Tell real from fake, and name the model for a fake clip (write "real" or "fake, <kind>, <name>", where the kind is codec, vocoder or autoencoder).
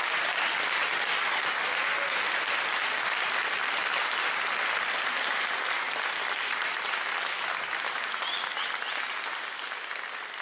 real